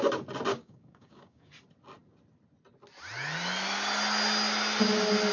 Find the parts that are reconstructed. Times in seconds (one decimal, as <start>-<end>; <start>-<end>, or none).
0.5-1.5